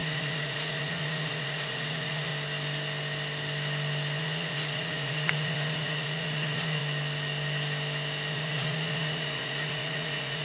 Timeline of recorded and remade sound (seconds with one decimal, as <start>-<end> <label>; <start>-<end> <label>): 0.0-2.3 remade; 2.3-4.2 recorded; 4.2-6.8 remade; 6.8-8.3 recorded; 8.3-10.4 remade